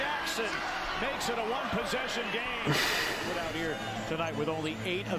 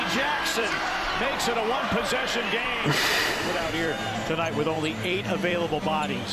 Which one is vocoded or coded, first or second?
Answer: second